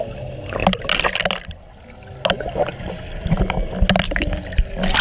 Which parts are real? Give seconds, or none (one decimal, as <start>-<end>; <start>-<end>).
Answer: 0.0-5.0